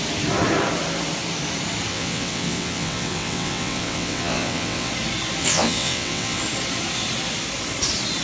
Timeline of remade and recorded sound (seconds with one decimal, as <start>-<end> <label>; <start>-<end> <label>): 0.0-1.9 recorded; 1.9-4.9 remade; 4.9-5.4 recorded; 5.4-6.4 remade; 6.4-8.2 recorded